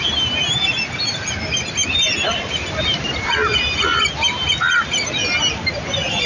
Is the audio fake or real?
real